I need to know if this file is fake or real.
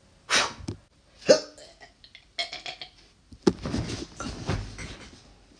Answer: real